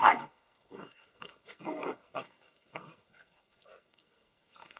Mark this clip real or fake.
fake